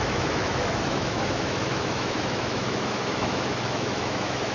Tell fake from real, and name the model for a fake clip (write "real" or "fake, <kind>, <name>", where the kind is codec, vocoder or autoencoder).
fake, autoencoder, DAC-VAE